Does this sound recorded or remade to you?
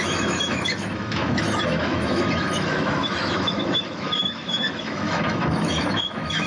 remade